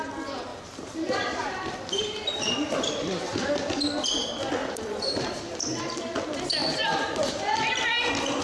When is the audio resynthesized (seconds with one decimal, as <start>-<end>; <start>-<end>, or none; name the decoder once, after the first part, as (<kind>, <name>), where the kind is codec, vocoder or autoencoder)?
0.5-3.4 (vocoder, BigVGAN v2); 4.6-5.9; 6.6-7.6